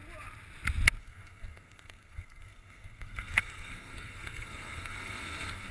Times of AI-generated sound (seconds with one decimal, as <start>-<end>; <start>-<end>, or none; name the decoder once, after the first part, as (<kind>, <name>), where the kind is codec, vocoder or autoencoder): 1.0-5.7 (codec, SNAC)